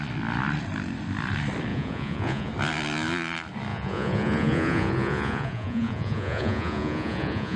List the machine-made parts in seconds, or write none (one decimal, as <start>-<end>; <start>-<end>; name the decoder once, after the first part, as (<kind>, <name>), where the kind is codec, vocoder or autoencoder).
1.7-2.5 (vocoder, Vocos); 3.7-7.6